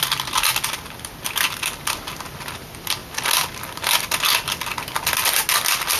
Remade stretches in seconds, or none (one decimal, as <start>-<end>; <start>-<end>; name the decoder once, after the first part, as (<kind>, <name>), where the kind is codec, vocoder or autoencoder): none